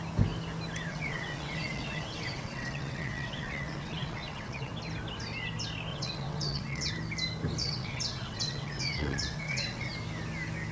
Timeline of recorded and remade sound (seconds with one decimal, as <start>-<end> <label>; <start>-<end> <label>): 0.0-0.9 recorded; 0.9-4.7 remade; 4.7-5.9 recorded; 5.9-6.9 remade; 6.9-7.6 recorded; 7.6-9.9 remade; 9.9-10.7 recorded

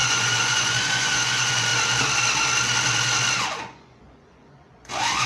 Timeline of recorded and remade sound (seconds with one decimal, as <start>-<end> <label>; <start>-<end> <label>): 0.0-1.7 remade; 1.7-3.4 recorded; 3.4-5.3 remade